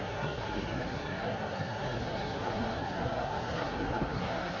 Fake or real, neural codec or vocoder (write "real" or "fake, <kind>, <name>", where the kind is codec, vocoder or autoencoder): fake, codec, SNAC